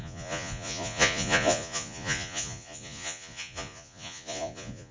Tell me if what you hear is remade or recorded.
remade